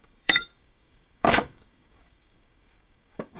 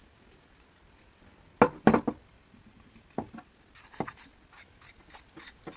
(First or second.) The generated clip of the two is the first